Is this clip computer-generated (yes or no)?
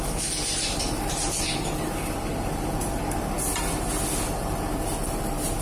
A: no